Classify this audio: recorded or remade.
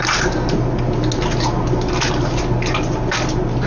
recorded